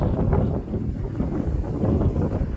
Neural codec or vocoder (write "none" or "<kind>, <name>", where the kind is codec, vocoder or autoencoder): none